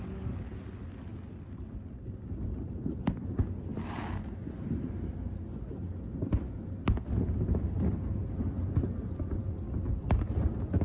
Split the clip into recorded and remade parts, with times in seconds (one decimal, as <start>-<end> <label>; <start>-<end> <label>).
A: 0.0-10.8 recorded